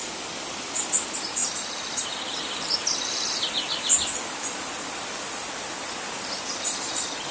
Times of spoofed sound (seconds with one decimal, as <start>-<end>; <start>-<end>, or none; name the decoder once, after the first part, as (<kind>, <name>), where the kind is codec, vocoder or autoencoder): none